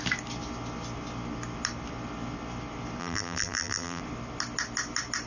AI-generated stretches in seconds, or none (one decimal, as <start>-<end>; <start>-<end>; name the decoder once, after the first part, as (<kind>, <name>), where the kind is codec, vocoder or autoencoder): 3.0-4.0 (vocoder, BigVGAN v2)

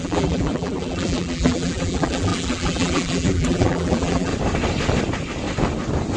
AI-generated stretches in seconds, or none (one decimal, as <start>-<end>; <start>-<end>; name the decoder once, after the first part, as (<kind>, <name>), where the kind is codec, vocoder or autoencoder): 0.0-4.3 (vocoder, BigVGAN v2)

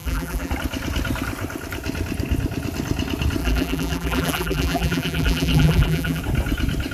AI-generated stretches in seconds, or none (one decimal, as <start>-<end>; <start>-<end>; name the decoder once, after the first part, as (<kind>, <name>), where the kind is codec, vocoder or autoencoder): 0.0-0.5 (vocoder, BigVGAN v2); 3.4-6.2

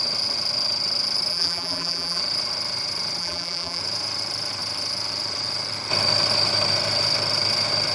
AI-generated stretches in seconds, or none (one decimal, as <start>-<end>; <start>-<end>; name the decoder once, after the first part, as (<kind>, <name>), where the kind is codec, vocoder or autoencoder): 1.3-2.2 (vocoder, BigVGAN v2); 3.2-3.8

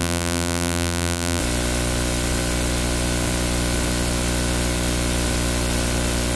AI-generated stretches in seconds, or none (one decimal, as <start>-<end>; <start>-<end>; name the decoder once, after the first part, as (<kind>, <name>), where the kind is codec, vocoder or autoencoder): 0.0-1.4 (vocoder, BigVGAN v2)